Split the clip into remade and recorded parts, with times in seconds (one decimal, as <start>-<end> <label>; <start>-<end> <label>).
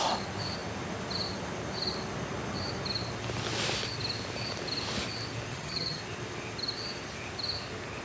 0.0-5.5 recorded; 5.5-6.0 remade; 6.0-8.0 recorded